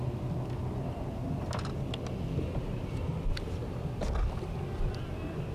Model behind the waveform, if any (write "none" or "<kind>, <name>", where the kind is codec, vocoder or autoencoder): none